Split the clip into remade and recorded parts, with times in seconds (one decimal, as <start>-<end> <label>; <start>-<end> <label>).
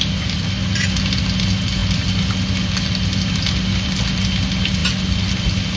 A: 0.0-5.8 recorded